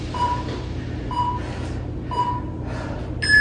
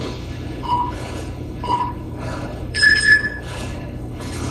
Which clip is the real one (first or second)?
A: first